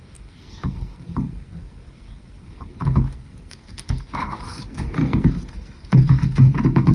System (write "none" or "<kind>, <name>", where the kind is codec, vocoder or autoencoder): codec, SNAC